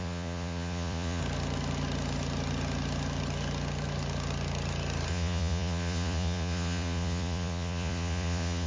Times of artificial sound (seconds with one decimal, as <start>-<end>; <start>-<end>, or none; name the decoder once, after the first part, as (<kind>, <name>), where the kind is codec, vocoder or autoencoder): 0.0-1.2 (vocoder, Vocos); 5.1-8.7